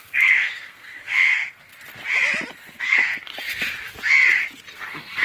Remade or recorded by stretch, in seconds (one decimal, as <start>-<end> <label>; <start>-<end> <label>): 0.0-1.7 remade; 1.7-2.8 recorded; 2.8-3.3 remade; 3.3-4.7 recorded; 4.7-5.2 remade